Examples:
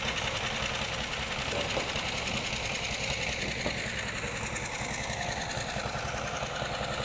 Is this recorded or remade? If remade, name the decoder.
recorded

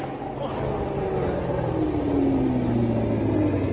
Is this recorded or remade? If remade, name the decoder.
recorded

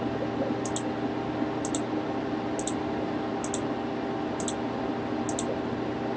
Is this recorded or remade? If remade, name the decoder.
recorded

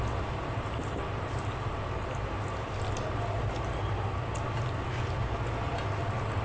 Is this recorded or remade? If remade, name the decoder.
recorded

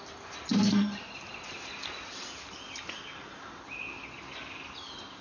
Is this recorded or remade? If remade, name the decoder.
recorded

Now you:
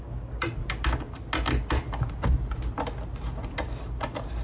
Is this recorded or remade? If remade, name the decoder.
recorded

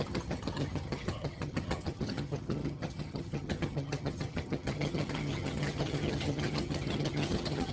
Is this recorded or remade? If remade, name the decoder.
remade, vocoder, HiFi-GAN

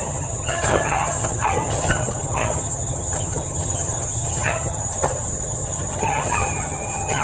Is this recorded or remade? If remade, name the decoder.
remade, vocoder, HiFi-GAN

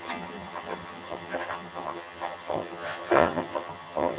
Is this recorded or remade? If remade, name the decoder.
remade, vocoder, HiFi-GAN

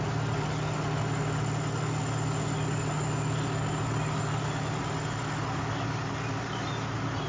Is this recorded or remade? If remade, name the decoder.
recorded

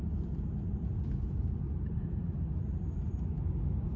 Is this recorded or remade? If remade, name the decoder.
recorded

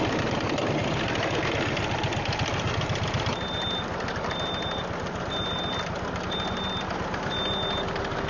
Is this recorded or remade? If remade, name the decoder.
recorded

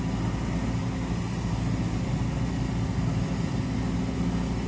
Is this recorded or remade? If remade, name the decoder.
recorded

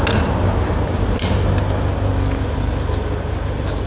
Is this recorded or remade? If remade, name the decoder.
recorded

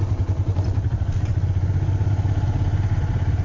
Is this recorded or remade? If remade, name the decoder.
recorded